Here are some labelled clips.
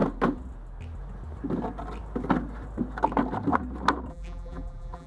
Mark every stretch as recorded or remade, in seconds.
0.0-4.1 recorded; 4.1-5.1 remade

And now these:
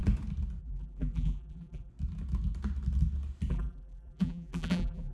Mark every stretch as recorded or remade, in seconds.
0.0-0.6 recorded; 0.6-1.9 remade; 1.9-3.5 recorded; 3.5-5.1 remade

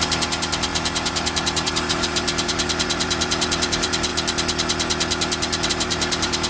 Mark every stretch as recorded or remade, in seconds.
0.0-4.1 remade; 4.1-5.7 recorded; 5.7-6.5 remade

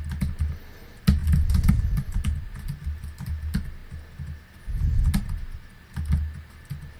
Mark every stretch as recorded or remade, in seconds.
0.0-7.0 recorded

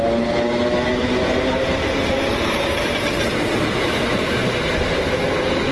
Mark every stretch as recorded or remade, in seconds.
0.0-0.9 recorded; 0.9-4.3 remade; 4.3-5.7 recorded